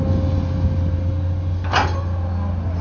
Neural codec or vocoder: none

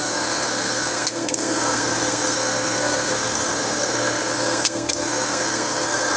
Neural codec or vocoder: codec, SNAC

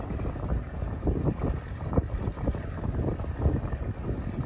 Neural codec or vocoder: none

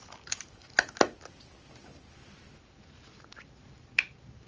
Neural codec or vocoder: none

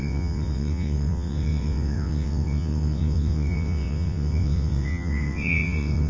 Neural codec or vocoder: vocoder, WaveNeXt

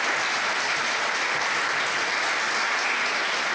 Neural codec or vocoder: none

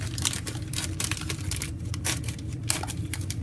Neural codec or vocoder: none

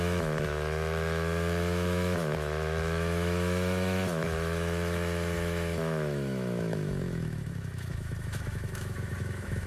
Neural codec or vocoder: autoencoder, DAC-VAE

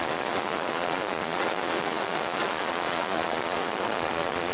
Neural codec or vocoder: vocoder, Vocos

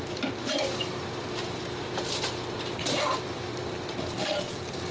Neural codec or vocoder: vocoder, BigVGAN v2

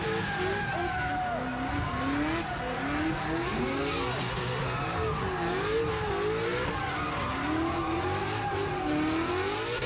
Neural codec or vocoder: none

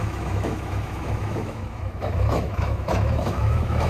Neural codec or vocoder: autoencoder, DAC-VAE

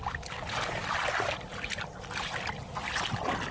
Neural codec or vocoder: none